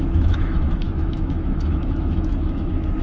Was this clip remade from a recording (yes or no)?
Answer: yes